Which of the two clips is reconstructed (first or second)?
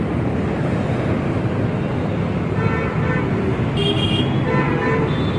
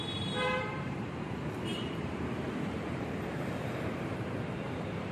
second